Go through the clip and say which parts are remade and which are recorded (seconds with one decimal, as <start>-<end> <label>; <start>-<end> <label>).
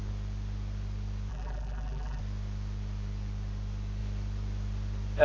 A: 0.0-1.3 recorded; 1.3-2.2 remade; 2.2-5.2 recorded